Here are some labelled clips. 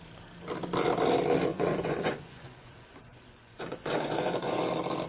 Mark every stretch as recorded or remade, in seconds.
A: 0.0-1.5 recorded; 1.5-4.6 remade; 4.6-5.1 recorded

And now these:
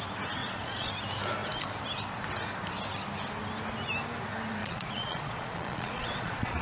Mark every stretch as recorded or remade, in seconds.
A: 0.0-0.4 recorded; 0.4-0.9 remade; 0.9-4.6 recorded; 4.6-6.6 remade